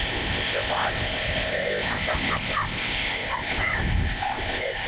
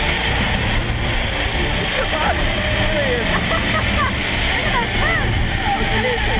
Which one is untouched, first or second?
second